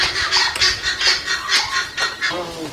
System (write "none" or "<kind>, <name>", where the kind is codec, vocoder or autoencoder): none